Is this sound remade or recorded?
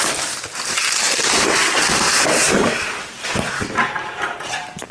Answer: remade